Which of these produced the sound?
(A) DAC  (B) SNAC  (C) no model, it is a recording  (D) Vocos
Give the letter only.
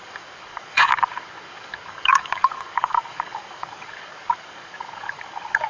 A